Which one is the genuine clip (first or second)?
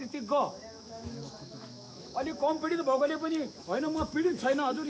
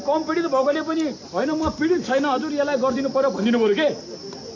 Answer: second